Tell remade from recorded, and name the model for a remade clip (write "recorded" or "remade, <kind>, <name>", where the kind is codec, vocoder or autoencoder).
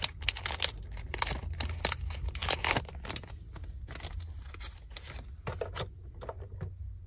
recorded